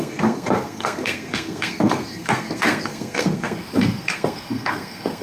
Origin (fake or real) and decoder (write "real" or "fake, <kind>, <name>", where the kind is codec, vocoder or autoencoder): fake, codec, SNAC